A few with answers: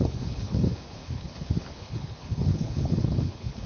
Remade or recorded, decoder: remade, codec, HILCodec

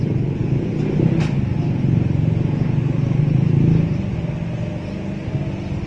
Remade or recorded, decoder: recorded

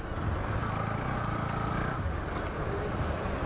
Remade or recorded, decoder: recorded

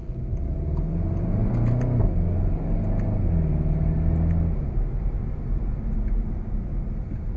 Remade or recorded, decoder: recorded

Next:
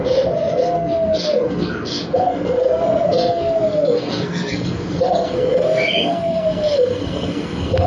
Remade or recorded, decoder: remade, codec, SNAC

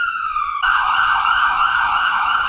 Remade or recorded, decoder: remade, autoencoder, DAC-VAE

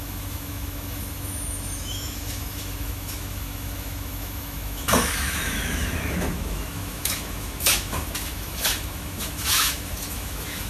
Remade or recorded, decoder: remade, autoencoder, DAC-VAE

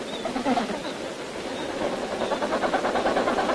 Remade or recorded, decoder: recorded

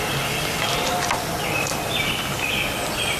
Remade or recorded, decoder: recorded